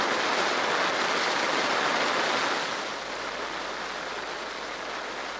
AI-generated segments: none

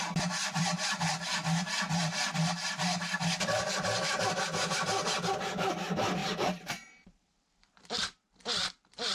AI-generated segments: 0.0-9.1 (vocoder, BigVGAN v2)